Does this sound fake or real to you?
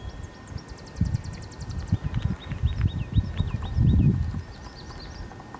real